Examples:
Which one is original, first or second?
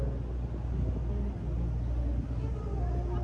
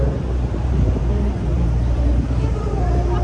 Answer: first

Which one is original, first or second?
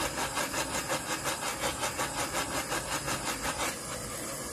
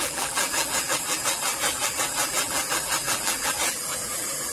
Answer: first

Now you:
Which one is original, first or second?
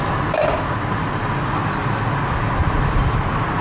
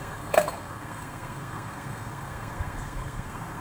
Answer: first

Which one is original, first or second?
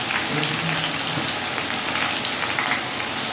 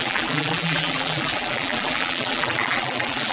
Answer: first